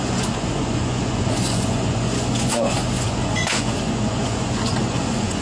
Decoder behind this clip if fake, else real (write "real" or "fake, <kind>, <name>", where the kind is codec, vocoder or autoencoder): fake, vocoder, Vocos